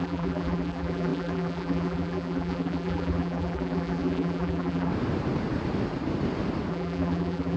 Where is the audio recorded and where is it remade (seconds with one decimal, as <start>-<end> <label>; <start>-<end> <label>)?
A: 0.0-4.9 remade; 4.9-6.7 recorded; 6.7-7.6 remade